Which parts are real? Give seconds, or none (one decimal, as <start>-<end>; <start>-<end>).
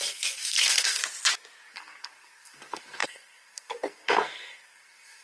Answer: 1.0-1.7